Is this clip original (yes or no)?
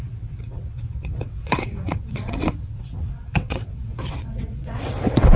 no